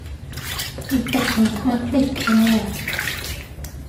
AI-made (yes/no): yes